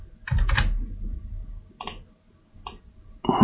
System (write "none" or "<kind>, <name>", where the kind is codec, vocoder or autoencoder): none